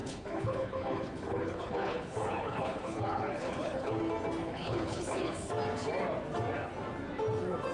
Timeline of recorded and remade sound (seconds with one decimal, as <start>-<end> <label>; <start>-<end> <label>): 0.0-4.0 remade; 4.0-4.4 recorded; 4.4-5.5 remade; 5.5-7.7 recorded